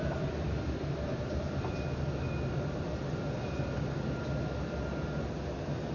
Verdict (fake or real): real